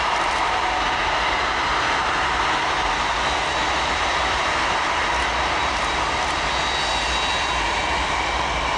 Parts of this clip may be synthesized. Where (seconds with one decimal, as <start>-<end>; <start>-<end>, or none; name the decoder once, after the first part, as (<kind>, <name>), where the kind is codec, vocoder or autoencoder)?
none